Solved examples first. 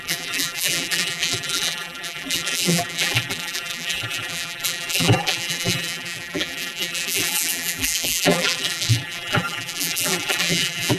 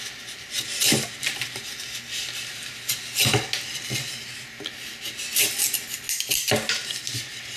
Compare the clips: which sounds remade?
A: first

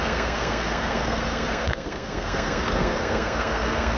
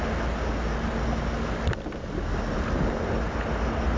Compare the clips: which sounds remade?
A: first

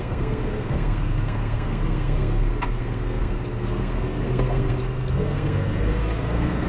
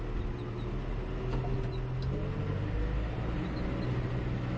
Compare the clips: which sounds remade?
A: first